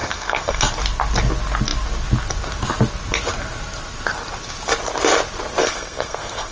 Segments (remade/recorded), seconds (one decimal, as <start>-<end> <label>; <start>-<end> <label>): 0.0-0.6 remade; 0.6-5.6 recorded; 5.6-6.5 remade